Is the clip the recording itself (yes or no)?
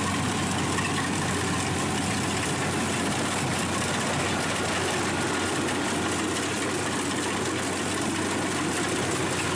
yes